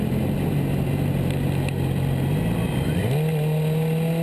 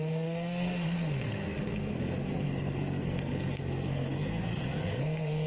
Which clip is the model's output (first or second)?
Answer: second